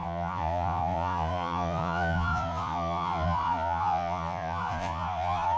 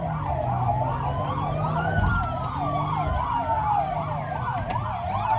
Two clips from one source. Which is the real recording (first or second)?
second